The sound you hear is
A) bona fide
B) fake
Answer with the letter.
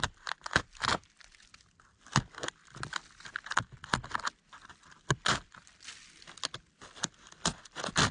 A